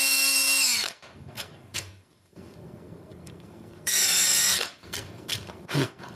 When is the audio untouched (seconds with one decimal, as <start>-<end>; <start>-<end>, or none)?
none